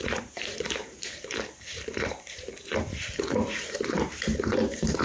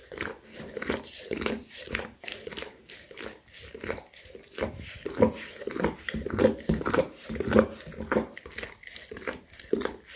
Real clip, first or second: second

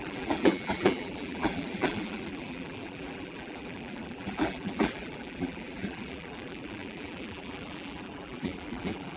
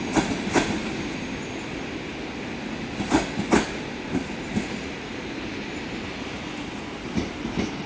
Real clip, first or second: second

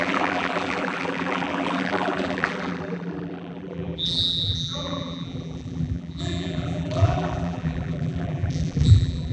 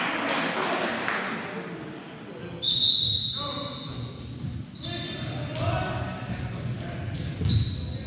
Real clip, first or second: second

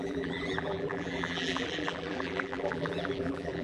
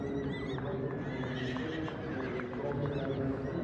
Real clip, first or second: second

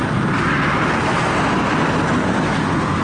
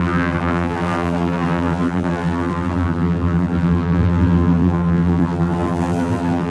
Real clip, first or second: first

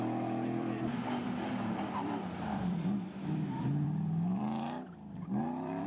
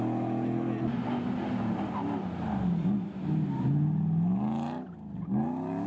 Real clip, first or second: second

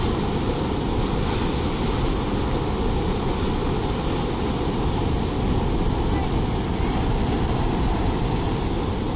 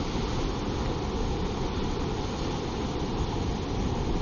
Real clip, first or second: first